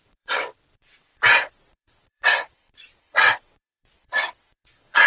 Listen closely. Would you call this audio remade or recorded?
remade